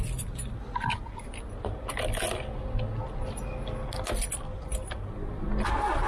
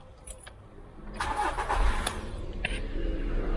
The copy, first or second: second